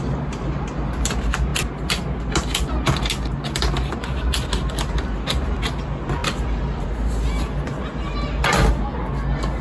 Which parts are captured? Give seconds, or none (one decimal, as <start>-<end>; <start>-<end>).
0.0-9.6